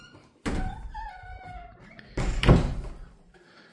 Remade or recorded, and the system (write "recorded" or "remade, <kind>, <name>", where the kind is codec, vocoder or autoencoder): recorded